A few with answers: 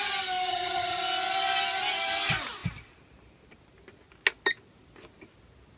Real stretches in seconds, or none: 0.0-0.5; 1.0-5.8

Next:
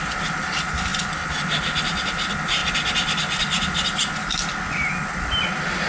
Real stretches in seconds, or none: 0.0-5.9

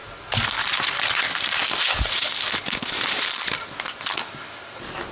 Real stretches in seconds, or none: 0.0-5.1

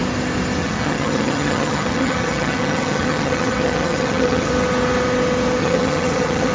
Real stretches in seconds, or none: 0.0-0.6; 4.5-5.6

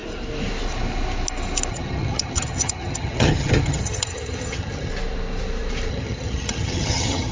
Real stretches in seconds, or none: 0.0-1.7; 4.9-5.9

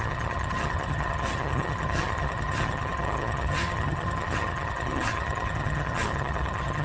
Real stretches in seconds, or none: none